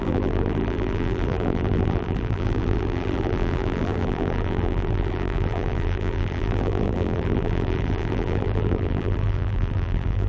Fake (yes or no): yes